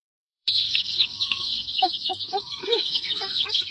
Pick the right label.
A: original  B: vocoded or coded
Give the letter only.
B